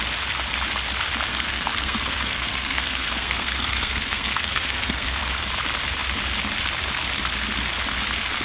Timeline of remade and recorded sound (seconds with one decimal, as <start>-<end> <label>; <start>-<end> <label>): 0.0-1.3 recorded; 1.3-5.2 remade; 5.2-8.4 recorded